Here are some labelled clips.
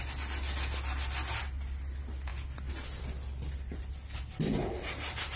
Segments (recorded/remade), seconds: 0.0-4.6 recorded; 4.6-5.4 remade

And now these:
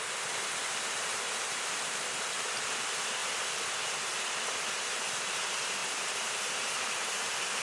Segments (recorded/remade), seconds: 0.0-3.2 remade; 3.2-3.8 recorded; 3.8-7.6 remade

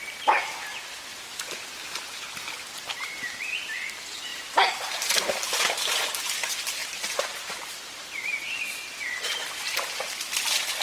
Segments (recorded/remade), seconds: 0.0-4.3 recorded; 4.3-5.7 remade; 5.7-6.8 recorded; 6.8-8.2 remade; 8.2-10.8 recorded

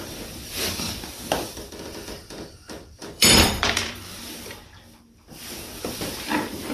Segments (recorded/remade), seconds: 0.0-6.7 remade

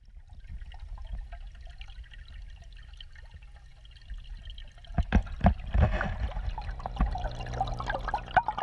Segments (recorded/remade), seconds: 0.0-8.6 recorded

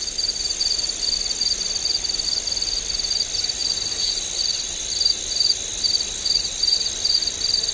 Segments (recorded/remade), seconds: 0.0-3.6 recorded; 3.6-5.1 remade; 5.1-7.7 recorded

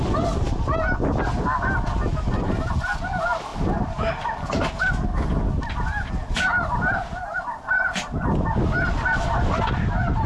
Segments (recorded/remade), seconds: 0.0-5.1 recorded; 5.1-6.1 remade; 6.1-6.5 recorded; 6.5-7.4 remade; 7.4-10.3 recorded

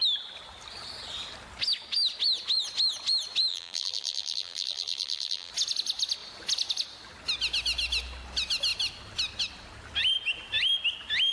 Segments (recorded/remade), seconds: 0.0-3.5 recorded; 3.5-5.5 remade; 5.5-11.3 recorded